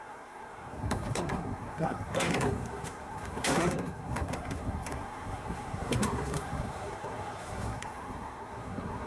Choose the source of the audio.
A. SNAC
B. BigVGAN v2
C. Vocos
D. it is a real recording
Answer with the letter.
A